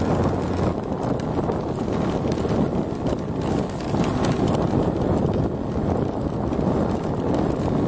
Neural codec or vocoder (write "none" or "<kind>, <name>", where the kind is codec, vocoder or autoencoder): none